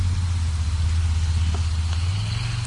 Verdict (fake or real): real